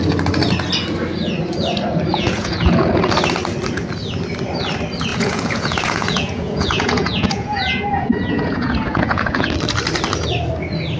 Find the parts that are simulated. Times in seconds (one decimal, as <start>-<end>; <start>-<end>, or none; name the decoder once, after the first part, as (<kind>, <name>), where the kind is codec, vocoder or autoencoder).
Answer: 2.1-2.9 (vocoder, Vocos); 5.1-9.5